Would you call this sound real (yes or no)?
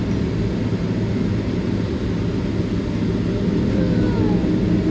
yes